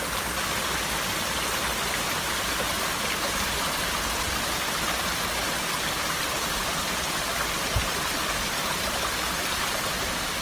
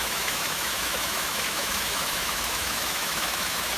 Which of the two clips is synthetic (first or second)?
second